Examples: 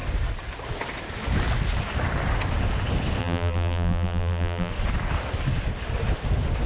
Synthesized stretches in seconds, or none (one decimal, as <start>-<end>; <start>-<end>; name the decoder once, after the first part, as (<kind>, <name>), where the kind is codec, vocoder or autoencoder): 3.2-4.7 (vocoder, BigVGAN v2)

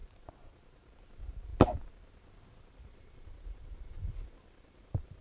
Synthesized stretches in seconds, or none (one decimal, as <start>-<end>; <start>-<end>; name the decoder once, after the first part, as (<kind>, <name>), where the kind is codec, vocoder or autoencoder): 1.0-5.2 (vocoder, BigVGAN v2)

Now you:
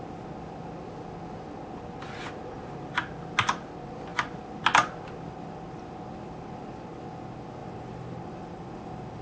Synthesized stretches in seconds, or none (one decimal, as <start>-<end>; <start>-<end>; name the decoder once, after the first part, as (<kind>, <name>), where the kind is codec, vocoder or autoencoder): 7.6-9.2 (vocoder, BigVGAN v2)